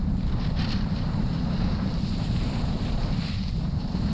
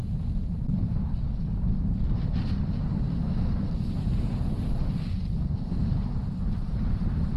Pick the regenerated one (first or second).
first